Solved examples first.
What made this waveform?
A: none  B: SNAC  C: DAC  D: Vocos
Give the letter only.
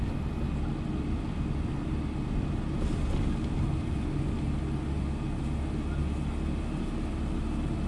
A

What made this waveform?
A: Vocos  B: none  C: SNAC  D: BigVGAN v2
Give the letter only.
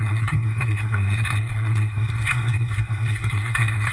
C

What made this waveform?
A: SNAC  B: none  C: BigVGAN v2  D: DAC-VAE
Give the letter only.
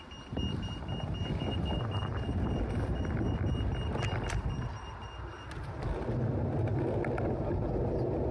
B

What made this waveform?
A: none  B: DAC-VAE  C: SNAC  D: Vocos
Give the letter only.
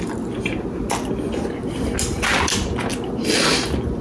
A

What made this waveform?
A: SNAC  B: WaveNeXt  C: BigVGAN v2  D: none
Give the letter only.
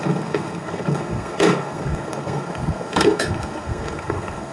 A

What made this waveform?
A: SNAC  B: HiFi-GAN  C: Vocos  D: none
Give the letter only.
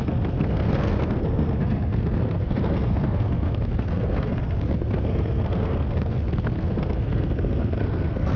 A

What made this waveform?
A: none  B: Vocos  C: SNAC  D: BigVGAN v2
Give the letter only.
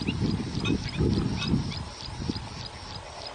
A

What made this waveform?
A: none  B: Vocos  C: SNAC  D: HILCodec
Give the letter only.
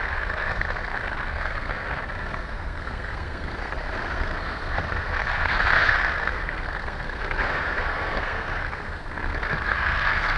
C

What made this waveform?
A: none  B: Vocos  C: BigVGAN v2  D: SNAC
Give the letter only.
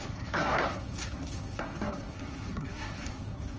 D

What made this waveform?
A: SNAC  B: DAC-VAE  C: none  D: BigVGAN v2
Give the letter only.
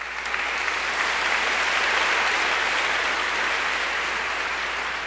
C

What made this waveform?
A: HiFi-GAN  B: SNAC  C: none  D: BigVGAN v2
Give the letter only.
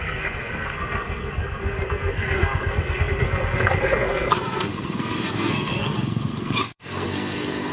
B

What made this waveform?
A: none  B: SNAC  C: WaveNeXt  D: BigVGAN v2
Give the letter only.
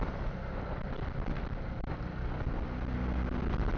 A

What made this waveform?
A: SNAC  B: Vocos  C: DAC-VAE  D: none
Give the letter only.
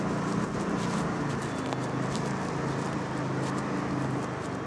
D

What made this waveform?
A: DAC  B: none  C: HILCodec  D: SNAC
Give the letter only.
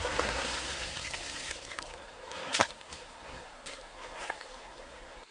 D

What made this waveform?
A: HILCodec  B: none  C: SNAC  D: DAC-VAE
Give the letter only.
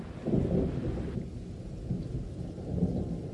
B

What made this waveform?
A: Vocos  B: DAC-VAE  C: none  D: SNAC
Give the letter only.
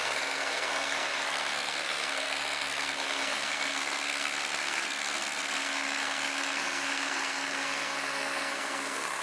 D